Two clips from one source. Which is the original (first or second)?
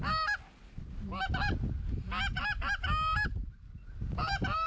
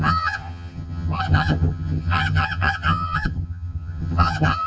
first